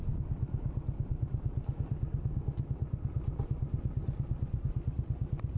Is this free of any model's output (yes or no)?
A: yes